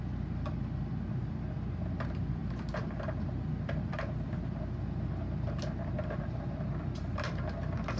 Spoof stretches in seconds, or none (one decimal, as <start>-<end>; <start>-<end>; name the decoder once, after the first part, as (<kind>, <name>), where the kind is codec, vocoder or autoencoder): none